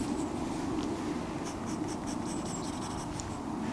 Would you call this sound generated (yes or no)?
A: no